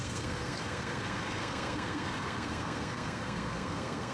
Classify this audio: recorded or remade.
remade